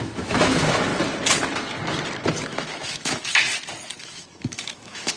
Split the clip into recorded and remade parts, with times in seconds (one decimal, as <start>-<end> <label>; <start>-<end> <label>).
0.0-0.9 remade; 0.9-2.3 recorded; 2.3-3.3 remade; 3.3-4.0 recorded; 4.0-5.2 remade